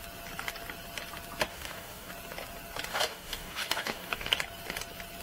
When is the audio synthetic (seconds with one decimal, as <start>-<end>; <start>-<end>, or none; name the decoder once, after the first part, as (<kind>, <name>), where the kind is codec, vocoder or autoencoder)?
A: 1.5-2.1 (codec, DAC); 2.9-4.3